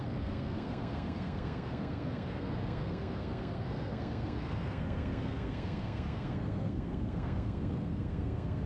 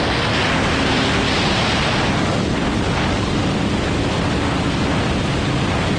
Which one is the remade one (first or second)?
first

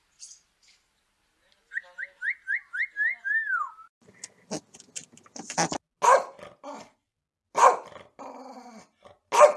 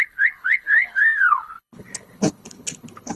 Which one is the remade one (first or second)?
second